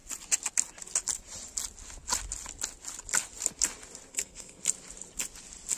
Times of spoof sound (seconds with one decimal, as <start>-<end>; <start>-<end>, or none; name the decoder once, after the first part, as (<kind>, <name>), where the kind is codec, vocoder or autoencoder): 4.1-4.6 (codec, SNAC)

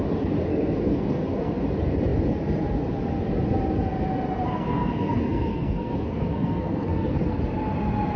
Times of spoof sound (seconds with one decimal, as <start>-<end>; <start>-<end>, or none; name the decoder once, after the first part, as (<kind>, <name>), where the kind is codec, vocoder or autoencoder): 0.5-1.6 (codec, SNAC); 4.5-7.4

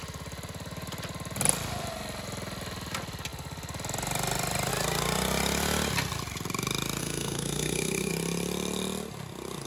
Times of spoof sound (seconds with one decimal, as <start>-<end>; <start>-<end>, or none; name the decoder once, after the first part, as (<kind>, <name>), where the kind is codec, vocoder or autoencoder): 7.0-8.1 (codec, SNAC)

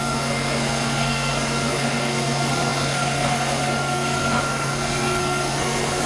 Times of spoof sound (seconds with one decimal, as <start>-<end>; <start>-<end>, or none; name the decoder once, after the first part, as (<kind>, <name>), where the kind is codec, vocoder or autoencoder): 0.0-6.1 (codec, SNAC)